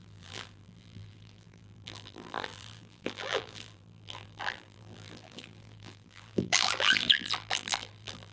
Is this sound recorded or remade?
remade